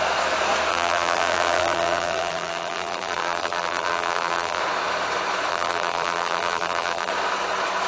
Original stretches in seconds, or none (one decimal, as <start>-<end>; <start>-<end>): 0.0-0.7; 4.6-5.5; 7.1-7.9